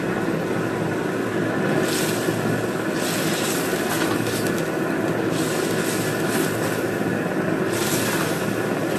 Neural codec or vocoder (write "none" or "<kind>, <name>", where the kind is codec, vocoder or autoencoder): none